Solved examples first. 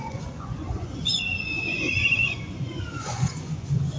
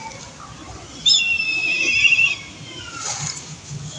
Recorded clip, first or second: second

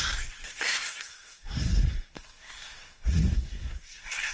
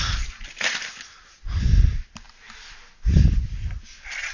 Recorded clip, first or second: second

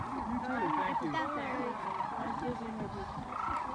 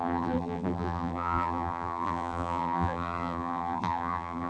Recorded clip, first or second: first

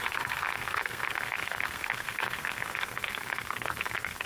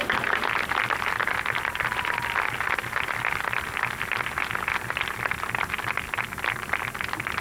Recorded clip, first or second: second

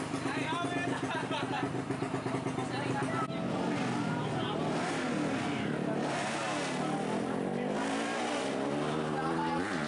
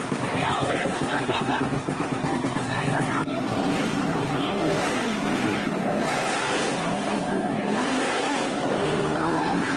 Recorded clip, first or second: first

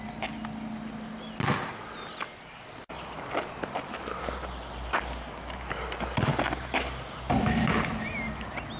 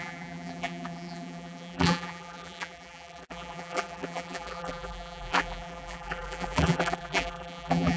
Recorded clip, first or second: first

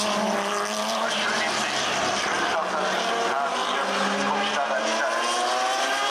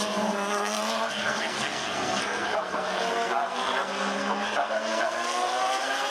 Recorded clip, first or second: first